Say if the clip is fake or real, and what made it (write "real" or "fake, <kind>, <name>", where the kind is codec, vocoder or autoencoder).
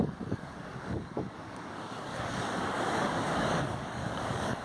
fake, codec, DAC